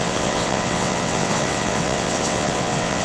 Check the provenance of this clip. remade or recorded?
remade